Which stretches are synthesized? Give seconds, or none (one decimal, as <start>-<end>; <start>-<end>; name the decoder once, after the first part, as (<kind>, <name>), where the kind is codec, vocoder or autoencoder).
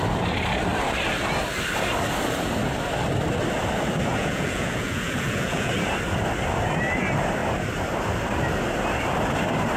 4.1-5.7 (vocoder, Vocos)